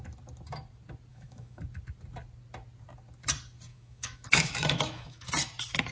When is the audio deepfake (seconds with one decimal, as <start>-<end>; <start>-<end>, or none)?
1.1-1.6; 3.7-5.3